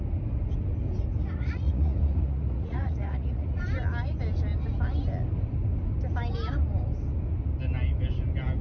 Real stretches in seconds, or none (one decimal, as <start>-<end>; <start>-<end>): 0.0-1.2; 3.6-8.6